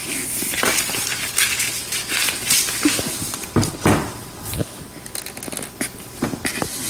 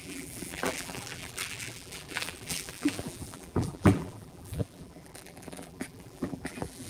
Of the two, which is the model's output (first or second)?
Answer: second